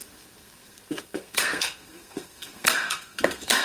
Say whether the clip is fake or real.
fake